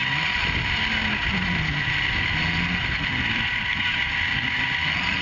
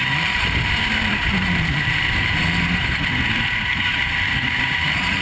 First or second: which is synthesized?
second